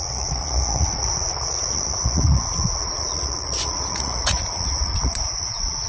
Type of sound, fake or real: fake